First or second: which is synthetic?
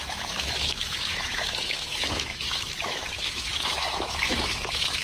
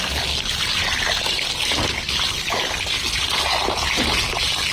first